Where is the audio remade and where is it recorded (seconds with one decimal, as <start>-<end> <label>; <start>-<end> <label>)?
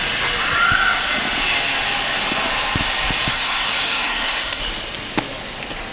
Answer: 0.0-3.3 recorded; 3.3-4.6 remade; 4.6-5.9 recorded